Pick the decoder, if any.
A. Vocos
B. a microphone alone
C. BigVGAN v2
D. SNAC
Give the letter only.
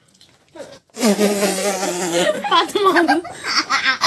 A